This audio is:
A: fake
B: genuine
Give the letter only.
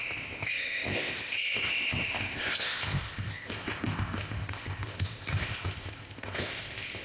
A